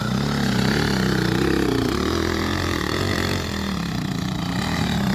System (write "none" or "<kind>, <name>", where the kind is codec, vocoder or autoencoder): vocoder, BigVGAN v2